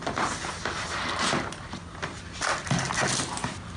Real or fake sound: real